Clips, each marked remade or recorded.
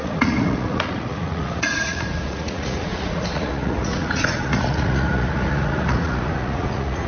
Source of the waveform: remade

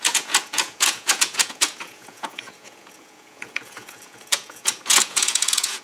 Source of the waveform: remade